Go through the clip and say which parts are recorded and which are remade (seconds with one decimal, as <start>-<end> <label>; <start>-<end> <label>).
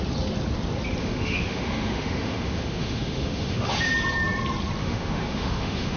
0.0-1.0 recorded; 1.0-3.7 remade; 3.7-4.8 recorded; 4.8-6.0 remade